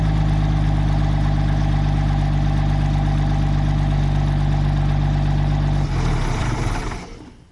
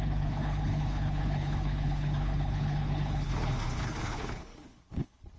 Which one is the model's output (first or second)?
second